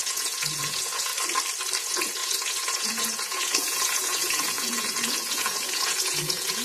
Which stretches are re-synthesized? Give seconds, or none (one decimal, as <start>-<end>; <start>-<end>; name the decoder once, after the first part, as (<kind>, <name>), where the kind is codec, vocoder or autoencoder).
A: 0.0-1.1 (vocoder, Vocos); 1.8-6.6